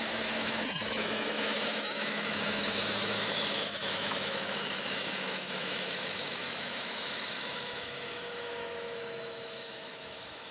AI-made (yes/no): yes